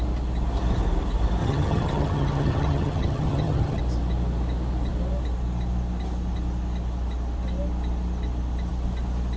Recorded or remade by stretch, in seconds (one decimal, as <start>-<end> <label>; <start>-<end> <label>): 0.0-1.4 recorded; 1.4-3.8 remade; 3.8-9.4 recorded